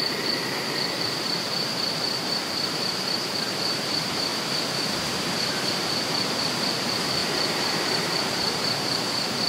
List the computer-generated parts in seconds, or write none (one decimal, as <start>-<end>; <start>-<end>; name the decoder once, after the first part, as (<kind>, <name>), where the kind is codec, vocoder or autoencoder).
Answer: 0.0-4.3 (vocoder, BigVGAN v2); 4.9-9.5